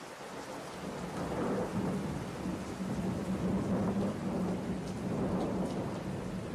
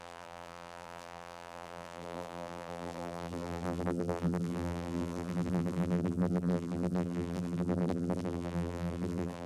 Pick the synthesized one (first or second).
second